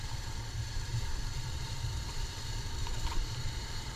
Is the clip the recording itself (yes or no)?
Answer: no